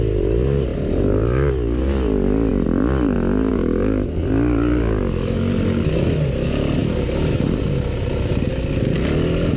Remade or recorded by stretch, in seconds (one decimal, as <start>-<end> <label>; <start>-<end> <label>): 0.0-9.6 recorded